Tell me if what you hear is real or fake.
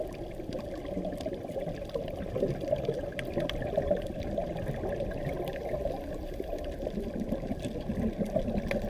real